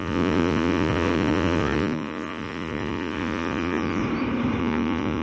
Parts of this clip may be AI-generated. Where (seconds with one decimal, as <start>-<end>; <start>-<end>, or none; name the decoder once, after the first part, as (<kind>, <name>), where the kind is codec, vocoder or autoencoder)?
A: 0.0-4.0 (vocoder, Vocos); 4.6-5.2